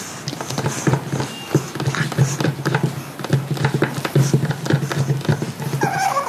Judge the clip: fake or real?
real